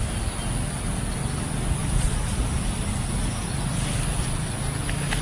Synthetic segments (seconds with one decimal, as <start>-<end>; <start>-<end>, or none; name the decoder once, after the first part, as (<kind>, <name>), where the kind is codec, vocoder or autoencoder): none

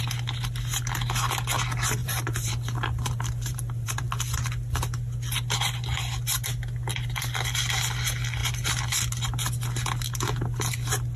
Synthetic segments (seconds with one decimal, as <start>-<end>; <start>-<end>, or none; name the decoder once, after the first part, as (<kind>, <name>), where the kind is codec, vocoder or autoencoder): 2.0-4.0 (vocoder, BigVGAN v2)

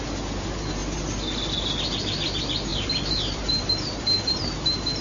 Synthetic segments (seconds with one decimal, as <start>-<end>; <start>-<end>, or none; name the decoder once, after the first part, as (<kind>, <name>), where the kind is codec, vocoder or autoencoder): 2.7-5.0 (vocoder, BigVGAN v2)

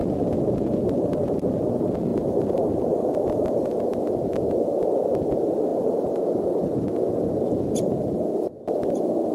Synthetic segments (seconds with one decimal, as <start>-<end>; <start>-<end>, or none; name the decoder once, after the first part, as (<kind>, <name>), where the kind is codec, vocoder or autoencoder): 2.1-3.7 (vocoder, BigVGAN v2); 5.7-6.2

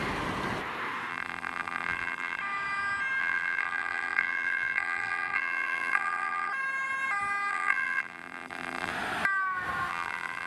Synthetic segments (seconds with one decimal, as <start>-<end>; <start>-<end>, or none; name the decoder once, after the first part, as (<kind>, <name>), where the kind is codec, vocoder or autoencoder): 1.1-2.4 (vocoder, BigVGAN v2); 3.2-6.5; 7.5-8.9; 9.9-10.5

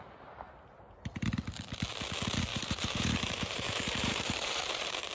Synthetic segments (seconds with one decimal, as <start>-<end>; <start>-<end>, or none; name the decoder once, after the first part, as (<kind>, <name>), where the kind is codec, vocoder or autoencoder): 2.5-5.1 (vocoder, BigVGAN v2)